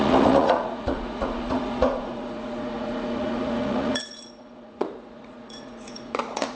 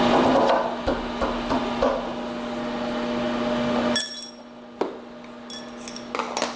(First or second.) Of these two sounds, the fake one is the first